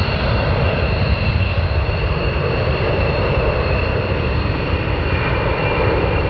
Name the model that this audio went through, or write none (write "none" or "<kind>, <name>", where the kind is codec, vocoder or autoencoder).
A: vocoder, BigVGAN v2